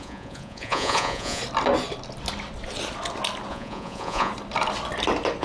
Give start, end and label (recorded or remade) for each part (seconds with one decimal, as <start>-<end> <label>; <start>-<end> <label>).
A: 0.0-1.4 remade; 1.4-3.5 recorded; 3.5-4.3 remade; 4.3-5.4 recorded